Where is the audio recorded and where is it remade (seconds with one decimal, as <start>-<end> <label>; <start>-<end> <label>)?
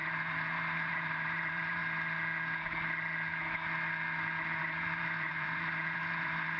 0.0-1.8 remade; 1.8-4.6 recorded; 4.6-6.6 remade